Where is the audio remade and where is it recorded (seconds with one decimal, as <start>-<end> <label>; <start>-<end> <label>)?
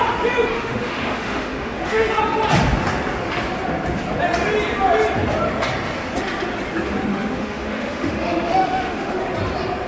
0.0-0.5 recorded; 0.5-2.2 remade; 2.2-7.1 recorded; 7.1-9.2 remade; 9.2-9.9 recorded